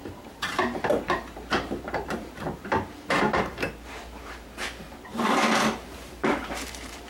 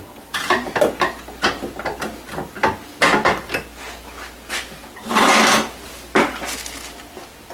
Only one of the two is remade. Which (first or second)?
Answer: first